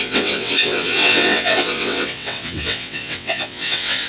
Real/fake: fake